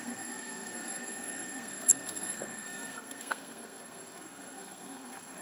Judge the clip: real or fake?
fake